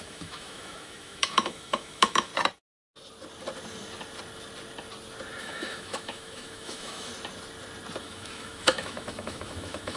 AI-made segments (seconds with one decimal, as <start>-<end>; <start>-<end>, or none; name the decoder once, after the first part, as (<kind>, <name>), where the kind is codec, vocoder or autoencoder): 0.0-2.3 (autoencoder, DAC-VAE); 5.4-7.1; 8.0-10.0